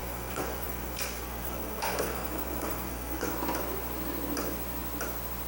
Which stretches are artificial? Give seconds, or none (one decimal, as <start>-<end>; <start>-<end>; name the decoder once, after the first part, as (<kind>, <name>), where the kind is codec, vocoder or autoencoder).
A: 0.0-3.3 (codec, SNAC)

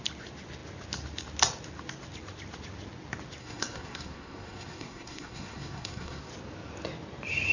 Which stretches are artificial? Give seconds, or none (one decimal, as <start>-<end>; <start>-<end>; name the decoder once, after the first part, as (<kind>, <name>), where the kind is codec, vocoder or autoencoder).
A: 3.4-6.3 (codec, SNAC)